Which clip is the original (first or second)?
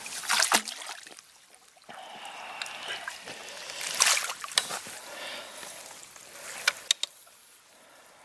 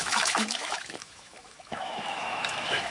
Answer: first